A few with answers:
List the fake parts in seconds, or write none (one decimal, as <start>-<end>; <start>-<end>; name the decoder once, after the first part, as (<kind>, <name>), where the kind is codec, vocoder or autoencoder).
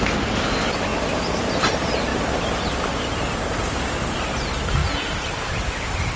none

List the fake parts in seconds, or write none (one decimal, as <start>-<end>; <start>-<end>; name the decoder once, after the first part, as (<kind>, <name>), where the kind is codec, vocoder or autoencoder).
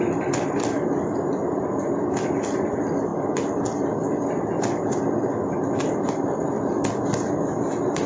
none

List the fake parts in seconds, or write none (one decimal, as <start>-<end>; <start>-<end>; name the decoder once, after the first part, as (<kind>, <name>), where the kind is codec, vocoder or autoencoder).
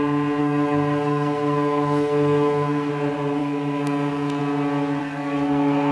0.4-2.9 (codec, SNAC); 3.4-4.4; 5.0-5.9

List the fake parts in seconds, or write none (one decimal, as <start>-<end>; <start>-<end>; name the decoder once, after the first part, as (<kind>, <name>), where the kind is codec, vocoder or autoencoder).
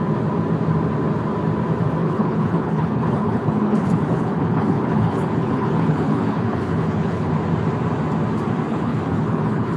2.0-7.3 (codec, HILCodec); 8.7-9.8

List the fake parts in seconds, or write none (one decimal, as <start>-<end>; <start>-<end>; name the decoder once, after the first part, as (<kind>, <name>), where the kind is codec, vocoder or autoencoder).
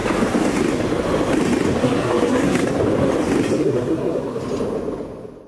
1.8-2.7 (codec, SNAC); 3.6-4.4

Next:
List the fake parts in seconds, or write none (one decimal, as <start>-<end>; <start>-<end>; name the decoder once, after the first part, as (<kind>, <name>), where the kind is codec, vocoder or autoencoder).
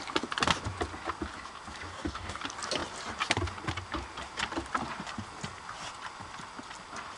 1.9-2.4 (codec, DAC)